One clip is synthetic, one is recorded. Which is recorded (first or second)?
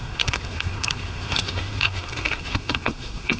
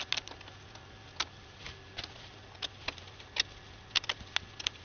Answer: second